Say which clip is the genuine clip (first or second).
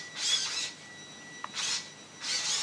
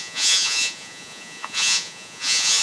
first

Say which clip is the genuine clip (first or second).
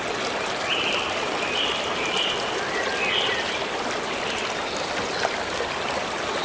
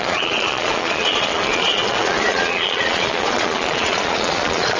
first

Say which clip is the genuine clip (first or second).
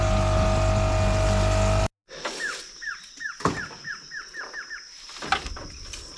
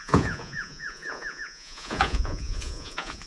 first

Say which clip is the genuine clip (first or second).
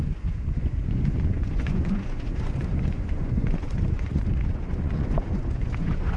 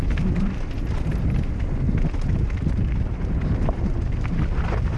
second